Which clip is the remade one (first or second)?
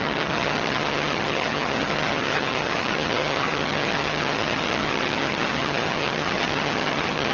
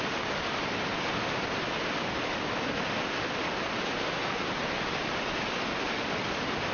first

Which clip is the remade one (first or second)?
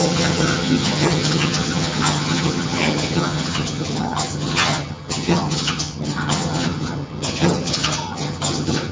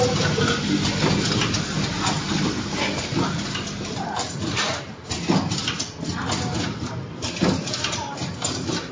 first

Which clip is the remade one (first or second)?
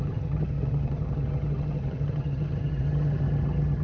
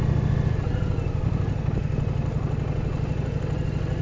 first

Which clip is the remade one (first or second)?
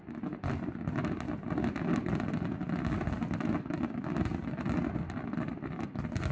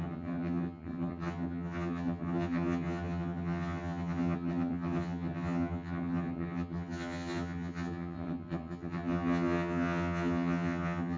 second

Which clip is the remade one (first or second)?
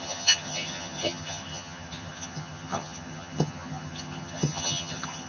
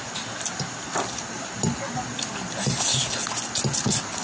first